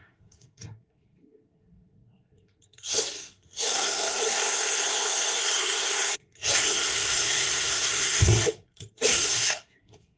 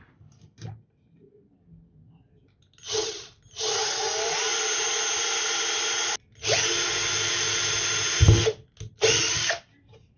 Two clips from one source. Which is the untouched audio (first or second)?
second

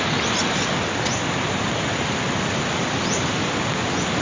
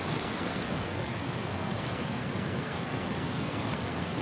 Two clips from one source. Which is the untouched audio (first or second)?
first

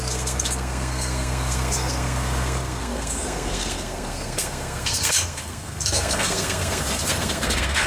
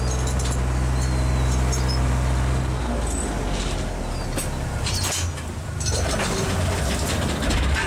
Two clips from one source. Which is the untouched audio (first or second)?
second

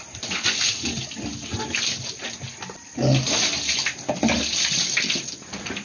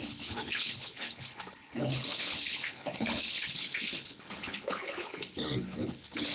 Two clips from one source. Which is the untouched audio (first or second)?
first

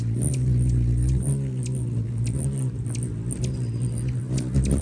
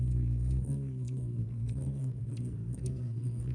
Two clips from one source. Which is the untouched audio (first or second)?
first